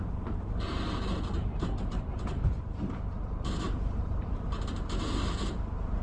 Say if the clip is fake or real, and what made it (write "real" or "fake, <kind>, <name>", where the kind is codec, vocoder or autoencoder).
fake, vocoder, BigVGAN v2